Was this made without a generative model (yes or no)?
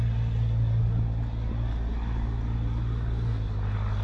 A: yes